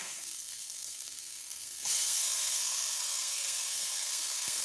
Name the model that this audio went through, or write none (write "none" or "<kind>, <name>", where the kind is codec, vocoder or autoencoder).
codec, SNAC